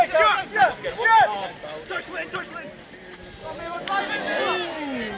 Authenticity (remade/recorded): recorded